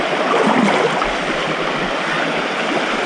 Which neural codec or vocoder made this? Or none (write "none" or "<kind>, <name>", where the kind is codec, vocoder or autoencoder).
none